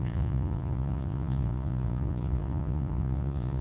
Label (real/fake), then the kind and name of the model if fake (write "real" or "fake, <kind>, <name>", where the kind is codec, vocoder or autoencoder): fake, vocoder, Vocos